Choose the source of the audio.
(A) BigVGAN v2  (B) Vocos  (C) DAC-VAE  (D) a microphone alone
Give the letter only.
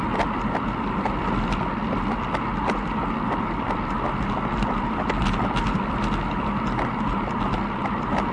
D